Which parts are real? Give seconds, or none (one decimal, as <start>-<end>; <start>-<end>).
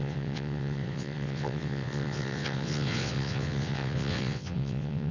none